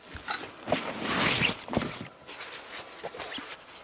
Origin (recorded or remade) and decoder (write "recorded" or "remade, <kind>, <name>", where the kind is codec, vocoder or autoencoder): recorded